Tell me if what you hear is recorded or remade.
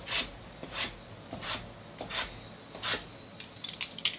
recorded